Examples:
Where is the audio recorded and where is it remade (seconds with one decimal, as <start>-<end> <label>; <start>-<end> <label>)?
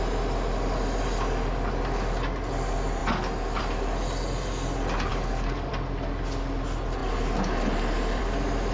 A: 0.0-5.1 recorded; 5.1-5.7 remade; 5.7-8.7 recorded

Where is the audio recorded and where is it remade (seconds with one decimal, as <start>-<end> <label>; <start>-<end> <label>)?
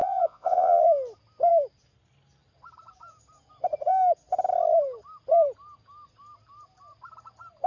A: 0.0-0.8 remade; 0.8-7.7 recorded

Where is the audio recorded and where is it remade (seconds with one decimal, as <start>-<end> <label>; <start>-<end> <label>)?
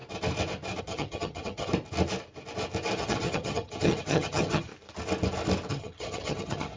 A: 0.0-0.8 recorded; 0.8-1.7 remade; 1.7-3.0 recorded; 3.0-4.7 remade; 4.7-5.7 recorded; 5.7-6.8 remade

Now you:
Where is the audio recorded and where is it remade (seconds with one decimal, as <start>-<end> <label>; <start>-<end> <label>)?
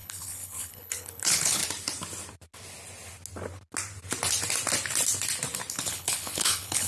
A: 0.0-1.6 remade; 1.6-5.7 recorded; 5.7-6.9 remade